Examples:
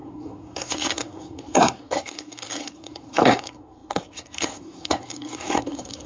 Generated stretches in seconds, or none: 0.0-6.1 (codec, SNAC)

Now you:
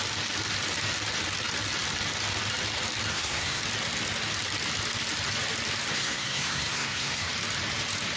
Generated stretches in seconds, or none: 3.1-3.6 (codec, SNAC); 5.9-7.3

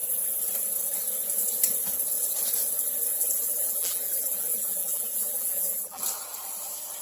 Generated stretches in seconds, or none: 3.1-6.0 (vocoder, BigVGAN v2)

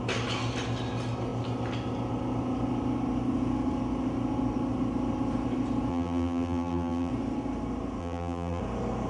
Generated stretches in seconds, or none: 5.9-7.1 (vocoder, BigVGAN v2); 8.0-8.6